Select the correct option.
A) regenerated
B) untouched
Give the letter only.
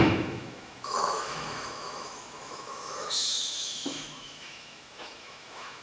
A